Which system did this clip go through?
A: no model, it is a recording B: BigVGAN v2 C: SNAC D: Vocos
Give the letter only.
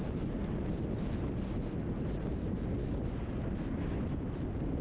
A